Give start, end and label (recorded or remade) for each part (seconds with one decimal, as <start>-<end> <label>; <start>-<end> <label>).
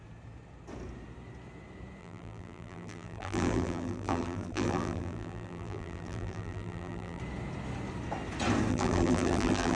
0.0-2.0 recorded; 2.0-7.2 remade; 7.2-8.7 recorded; 8.7-9.8 remade